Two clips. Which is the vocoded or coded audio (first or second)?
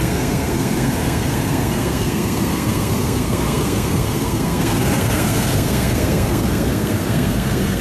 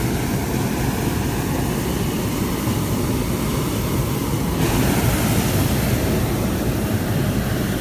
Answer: first